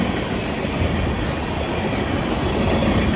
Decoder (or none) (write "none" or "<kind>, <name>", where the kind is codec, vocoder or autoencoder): none